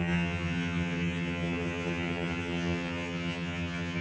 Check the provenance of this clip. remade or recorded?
remade